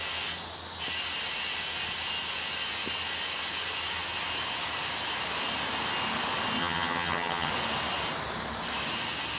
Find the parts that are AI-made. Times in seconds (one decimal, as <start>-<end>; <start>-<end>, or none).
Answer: 6.6-7.5